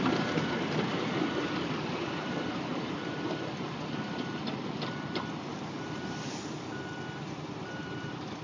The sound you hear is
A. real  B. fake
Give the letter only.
B